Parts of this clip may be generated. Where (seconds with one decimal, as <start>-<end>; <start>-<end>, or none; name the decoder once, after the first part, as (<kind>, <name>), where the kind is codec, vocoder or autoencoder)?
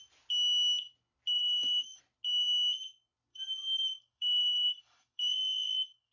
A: 1.4-2.0 (codec, DAC); 3.3-6.1